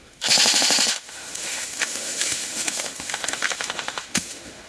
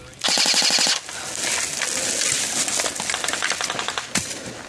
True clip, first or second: second